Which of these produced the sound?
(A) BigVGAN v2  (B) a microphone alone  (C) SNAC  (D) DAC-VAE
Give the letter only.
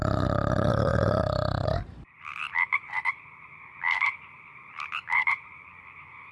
A